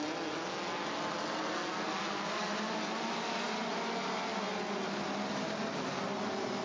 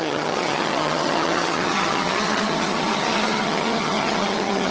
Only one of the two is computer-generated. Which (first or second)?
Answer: second